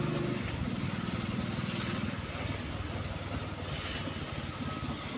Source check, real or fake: real